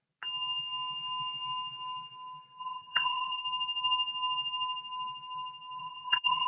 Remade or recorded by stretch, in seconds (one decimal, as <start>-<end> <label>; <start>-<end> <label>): 0.0-2.6 recorded; 2.6-3.4 remade; 3.4-5.8 recorded; 5.8-6.5 remade